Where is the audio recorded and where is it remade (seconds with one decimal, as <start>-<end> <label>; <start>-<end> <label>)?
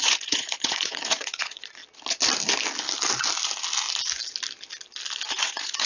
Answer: 0.0-1.8 remade; 1.8-5.3 recorded; 5.3-5.9 remade